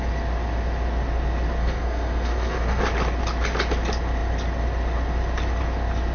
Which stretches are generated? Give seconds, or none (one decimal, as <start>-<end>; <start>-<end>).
1.6-2.8